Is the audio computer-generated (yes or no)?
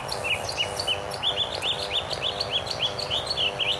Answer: no